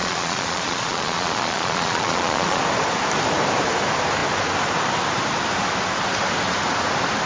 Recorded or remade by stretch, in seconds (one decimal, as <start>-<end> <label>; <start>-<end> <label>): 0.0-2.6 remade; 2.6-7.3 recorded